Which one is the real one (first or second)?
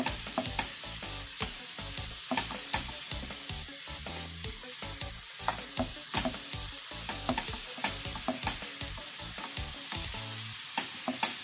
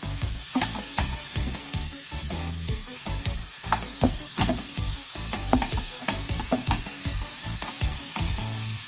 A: first